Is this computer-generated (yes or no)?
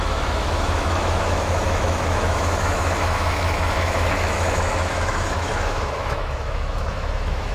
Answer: yes